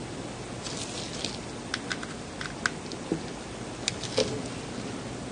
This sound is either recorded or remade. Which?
recorded